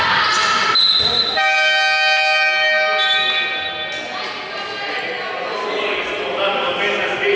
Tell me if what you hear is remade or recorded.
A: recorded